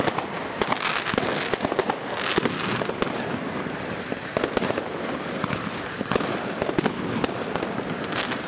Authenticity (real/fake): real